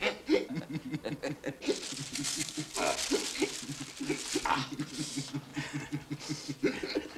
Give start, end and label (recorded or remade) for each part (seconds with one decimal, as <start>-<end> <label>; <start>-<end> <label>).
0.0-2.1 recorded; 2.1-2.7 remade; 2.7-7.2 recorded

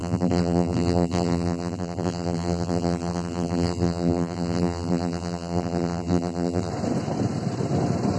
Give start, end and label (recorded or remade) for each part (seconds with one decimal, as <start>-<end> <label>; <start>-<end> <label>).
0.0-6.7 remade; 6.7-8.2 recorded

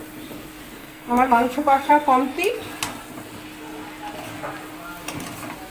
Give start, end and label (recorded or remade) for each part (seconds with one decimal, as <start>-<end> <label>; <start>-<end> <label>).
0.0-0.8 recorded; 0.8-1.9 remade; 1.9-5.7 recorded

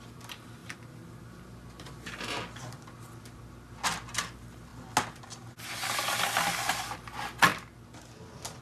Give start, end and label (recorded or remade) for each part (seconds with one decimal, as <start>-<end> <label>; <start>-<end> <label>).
0.0-8.6 recorded

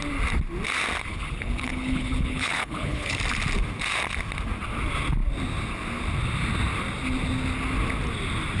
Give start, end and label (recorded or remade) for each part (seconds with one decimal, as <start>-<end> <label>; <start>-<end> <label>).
0.0-1.1 recorded; 1.1-3.2 remade; 3.2-8.6 recorded

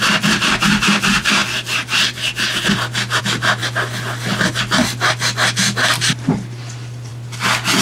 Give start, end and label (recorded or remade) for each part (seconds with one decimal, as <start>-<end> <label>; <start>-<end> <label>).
0.0-1.4 remade; 1.4-3.2 recorded; 3.2-3.6 remade; 3.6-4.6 recorded; 4.6-7.8 remade